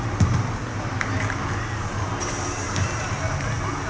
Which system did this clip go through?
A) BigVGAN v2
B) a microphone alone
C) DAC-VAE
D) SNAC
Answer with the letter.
B